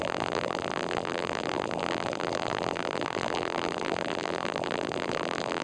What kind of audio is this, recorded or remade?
remade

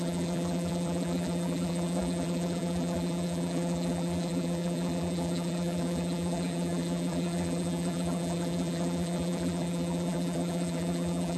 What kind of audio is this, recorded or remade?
remade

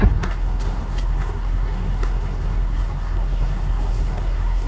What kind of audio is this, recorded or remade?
remade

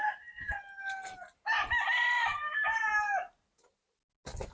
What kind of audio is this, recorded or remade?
recorded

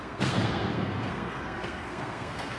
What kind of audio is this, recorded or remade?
remade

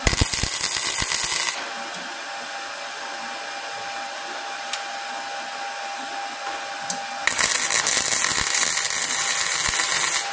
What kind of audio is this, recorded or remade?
recorded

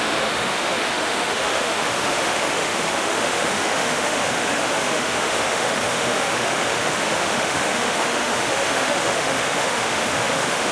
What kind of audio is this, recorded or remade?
remade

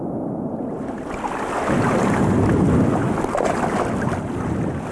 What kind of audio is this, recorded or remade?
recorded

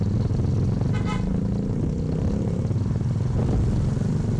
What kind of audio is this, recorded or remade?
recorded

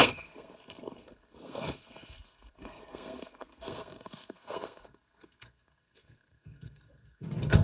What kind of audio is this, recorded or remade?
remade